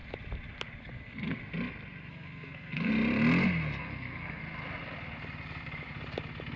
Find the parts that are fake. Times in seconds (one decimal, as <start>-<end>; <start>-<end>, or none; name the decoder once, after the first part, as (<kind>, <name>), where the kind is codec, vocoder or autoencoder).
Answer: 0.9-1.4 (codec, SNAC); 2.1-2.9; 3.8-4.4

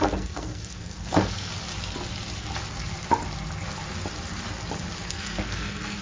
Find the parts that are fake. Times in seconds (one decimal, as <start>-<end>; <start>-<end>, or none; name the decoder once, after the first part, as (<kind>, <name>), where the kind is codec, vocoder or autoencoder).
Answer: 0.0-1.5 (codec, SNAC); 5.1-6.0

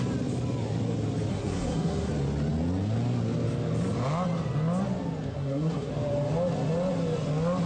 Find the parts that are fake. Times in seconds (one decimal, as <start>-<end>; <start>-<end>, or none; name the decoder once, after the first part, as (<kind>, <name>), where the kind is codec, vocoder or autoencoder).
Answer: 1.3-2.1 (codec, SNAC); 5.3-5.9

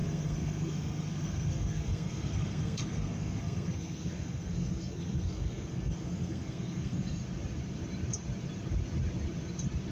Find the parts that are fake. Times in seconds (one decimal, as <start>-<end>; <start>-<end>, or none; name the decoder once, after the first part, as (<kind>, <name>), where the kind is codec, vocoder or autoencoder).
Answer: 0.0-7.2 (codec, SNAC)

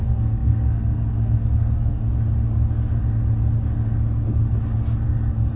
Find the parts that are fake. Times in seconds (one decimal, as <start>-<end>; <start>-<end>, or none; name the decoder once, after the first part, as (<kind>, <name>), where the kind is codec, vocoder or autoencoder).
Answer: 0.0-2.0 (codec, SNAC)

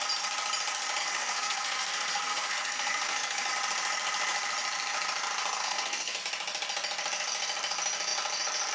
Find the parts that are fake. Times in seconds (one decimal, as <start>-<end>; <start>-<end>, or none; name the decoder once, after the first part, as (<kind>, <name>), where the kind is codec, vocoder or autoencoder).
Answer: 1.0-3.5 (codec, SNAC); 5.6-6.2